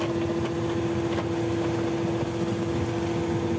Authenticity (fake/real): real